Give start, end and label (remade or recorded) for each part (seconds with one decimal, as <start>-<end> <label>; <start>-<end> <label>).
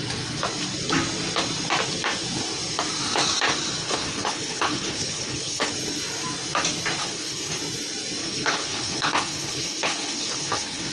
0.0-3.8 recorded; 3.8-5.7 remade; 5.7-7.0 recorded; 7.0-7.6 remade; 7.6-8.2 recorded; 8.2-10.9 remade